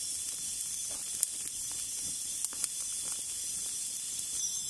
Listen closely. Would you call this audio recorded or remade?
recorded